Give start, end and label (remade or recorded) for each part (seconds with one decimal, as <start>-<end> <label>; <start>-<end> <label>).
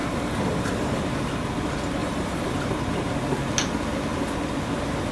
0.0-1.0 remade; 1.0-2.0 recorded; 2.0-2.6 remade; 2.6-5.1 recorded